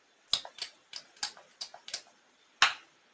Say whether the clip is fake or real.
real